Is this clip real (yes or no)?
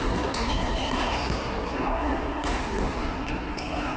no